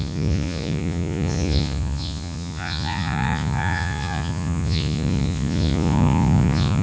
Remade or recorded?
remade